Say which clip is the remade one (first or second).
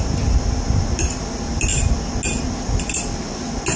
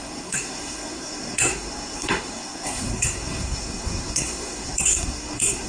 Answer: second